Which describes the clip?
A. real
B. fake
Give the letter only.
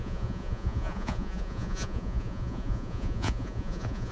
B